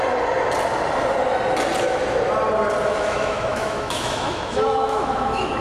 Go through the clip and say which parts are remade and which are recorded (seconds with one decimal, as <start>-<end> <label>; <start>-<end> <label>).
0.0-2.9 recorded; 2.9-5.6 remade